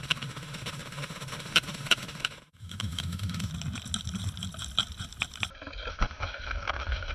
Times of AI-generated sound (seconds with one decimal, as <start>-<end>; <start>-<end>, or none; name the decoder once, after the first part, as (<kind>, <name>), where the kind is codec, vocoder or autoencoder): 0.0-3.5 (autoencoder, DAC-VAE); 5.9-7.1